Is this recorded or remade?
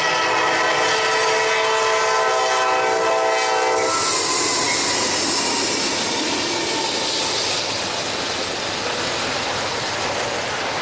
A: recorded